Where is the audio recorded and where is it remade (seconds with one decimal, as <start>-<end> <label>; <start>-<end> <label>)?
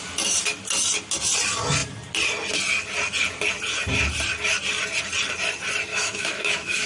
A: 0.0-5.9 recorded; 5.9-6.9 remade